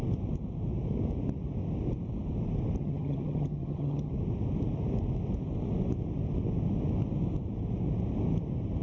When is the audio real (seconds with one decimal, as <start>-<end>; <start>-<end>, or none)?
0.0-2.8; 4.1-8.8